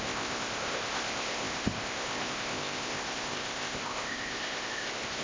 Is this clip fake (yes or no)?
yes